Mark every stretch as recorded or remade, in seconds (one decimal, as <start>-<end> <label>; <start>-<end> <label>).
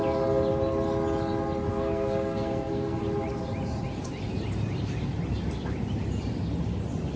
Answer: 0.0-1.7 recorded; 1.7-3.0 remade; 3.0-7.2 recorded